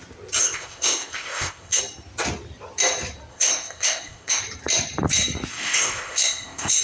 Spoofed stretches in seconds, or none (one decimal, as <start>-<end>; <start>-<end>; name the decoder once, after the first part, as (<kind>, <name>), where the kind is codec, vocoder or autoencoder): 0.4-1.8 (codec, ZipCodec); 3.3-4.4; 5.5-6.8

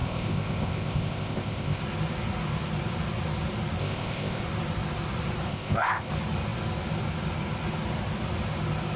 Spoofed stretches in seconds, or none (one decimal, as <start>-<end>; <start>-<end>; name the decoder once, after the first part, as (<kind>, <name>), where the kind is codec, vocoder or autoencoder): 0.0-1.8 (codec, ZipCodec); 3.8-4.4; 5.5-6.1

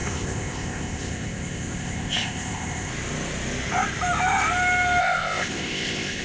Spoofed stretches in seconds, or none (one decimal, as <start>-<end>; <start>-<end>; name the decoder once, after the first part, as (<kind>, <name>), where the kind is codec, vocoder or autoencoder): 0.0-2.9 (codec, ZipCodec); 5.0-6.2

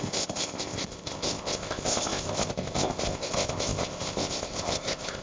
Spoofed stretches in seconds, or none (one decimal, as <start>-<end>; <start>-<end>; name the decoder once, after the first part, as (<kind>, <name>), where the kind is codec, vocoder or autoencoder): 0.0-5.2 (codec, ZipCodec)

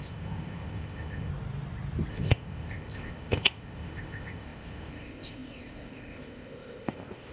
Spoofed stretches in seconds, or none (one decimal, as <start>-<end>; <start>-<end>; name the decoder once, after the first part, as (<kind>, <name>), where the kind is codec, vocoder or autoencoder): 0.0-1.3 (codec, ZipCodec); 2.1-7.3

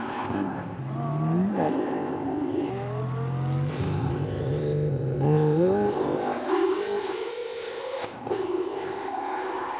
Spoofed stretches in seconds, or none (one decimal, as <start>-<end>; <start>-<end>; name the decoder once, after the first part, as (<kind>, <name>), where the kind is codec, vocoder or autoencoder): 0.0-0.8 (codec, ZipCodec); 1.5-2.7; 3.7-9.8